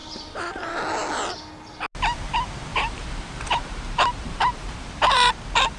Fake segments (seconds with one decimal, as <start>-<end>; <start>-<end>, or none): 0.0-0.8; 2.7-5.3